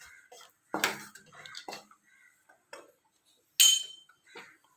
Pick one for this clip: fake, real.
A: real